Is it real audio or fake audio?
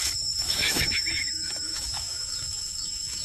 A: fake